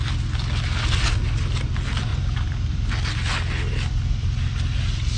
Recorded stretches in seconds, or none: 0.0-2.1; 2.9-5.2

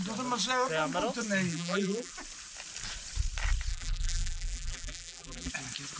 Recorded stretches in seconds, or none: 0.0-1.5; 2.1-3.7; 5.5-6.0

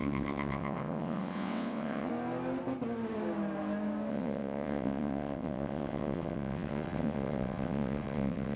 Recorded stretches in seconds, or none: 2.1-4.1

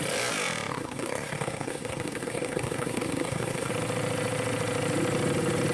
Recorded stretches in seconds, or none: 0.0-0.7; 3.7-5.7

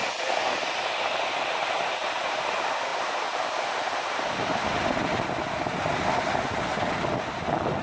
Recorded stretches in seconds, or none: 0.0-7.8

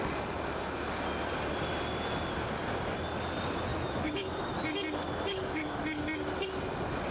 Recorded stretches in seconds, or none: 0.0-3.7; 4.4-5.3; 5.8-7.1